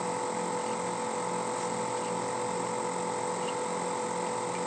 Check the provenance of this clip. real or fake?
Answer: real